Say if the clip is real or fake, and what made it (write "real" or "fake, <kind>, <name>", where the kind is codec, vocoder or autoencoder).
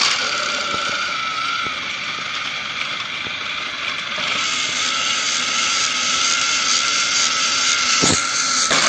real